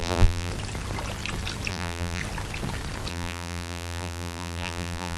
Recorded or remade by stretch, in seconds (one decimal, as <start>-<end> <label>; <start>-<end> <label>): 0.0-0.5 remade; 0.5-1.7 recorded; 1.7-2.2 remade; 2.2-3.1 recorded; 3.1-5.2 remade